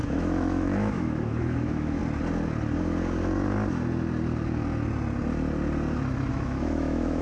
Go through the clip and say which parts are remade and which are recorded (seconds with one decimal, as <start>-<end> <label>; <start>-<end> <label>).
0.0-2.0 remade; 2.0-6.3 recorded; 6.3-7.2 remade